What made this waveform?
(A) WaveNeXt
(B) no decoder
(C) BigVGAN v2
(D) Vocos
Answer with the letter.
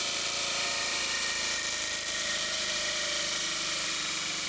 C